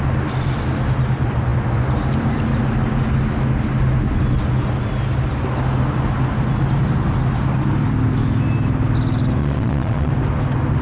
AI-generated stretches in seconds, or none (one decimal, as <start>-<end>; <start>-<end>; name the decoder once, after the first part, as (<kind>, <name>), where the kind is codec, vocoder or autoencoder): 9.4-10.1 (vocoder, Vocos)